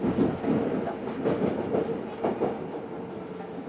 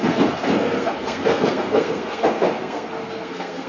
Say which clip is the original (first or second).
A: first